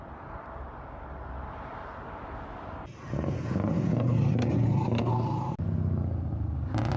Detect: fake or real real